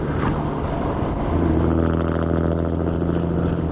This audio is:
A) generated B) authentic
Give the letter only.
B